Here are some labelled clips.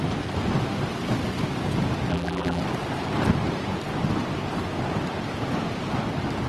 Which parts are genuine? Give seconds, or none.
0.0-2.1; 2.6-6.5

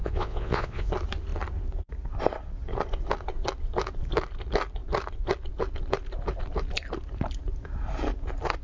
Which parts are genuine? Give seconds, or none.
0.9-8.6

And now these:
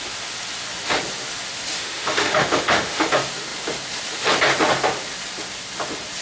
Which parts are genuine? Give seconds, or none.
0.0-1.8; 3.1-6.2